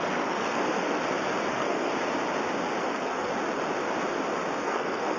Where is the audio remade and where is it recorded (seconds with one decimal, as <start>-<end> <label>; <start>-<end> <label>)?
0.0-1.0 remade; 1.0-1.5 recorded; 1.5-1.9 remade; 1.9-2.8 recorded; 2.8-3.3 remade; 3.3-4.6 recorded; 4.6-5.2 remade